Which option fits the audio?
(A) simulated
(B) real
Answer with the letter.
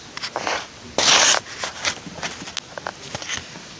B